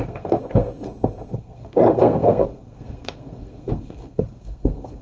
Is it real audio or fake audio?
fake